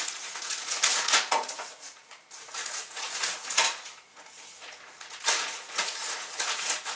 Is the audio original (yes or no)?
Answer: no